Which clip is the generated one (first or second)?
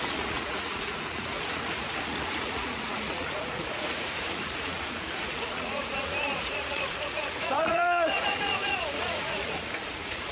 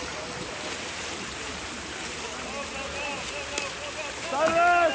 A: first